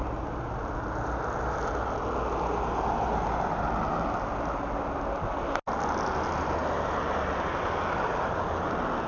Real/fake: real